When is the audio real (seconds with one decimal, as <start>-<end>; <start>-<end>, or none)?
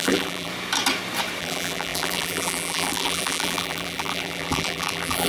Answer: 0.5-1.4